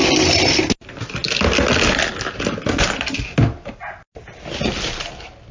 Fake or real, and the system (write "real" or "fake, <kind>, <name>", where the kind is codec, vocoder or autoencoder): real